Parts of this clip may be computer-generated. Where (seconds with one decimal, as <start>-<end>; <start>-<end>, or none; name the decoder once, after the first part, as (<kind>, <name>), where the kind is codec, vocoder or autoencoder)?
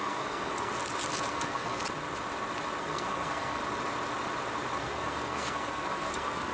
0.0-0.7 (codec, SNAC); 1.3-1.8; 2.8-3.6; 4.8-6.5